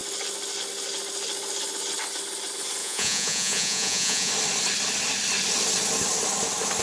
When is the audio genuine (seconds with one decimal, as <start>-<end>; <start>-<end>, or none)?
0.0-2.8; 4.3-6.8

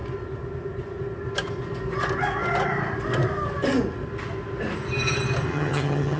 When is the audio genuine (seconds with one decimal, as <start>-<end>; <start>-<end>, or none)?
0.0-5.5

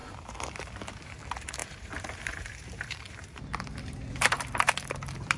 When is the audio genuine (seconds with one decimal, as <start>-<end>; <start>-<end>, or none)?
0.9-1.6; 4.4-5.4

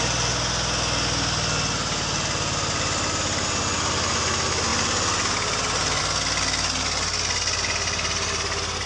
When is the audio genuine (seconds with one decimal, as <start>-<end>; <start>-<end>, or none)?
0.0-8.9

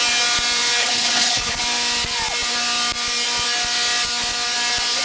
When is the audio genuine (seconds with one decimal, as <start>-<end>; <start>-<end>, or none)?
0.0-0.8; 1.6-5.0